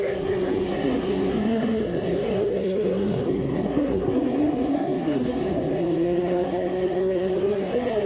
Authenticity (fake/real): fake